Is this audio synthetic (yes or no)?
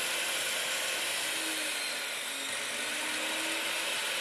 no